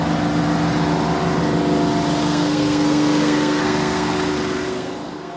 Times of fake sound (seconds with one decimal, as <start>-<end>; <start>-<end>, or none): 2.2-5.4